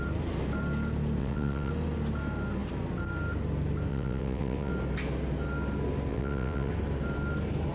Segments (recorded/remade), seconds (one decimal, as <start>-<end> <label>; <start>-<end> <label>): 0.0-1.2 recorded; 1.2-1.7 remade; 1.7-3.9 recorded; 3.9-4.7 remade; 4.7-6.1 recorded; 6.1-6.7 remade; 6.7-7.7 recorded